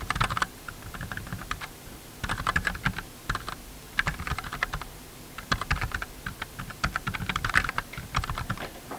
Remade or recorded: recorded